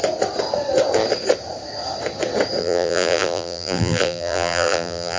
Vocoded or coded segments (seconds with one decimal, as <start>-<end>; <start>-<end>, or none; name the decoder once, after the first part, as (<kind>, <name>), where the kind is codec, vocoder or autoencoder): 2.6-5.2 (vocoder, BigVGAN v2)